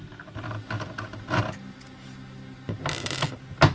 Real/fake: real